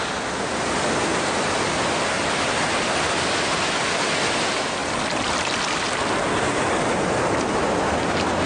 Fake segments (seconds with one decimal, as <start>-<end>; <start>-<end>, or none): none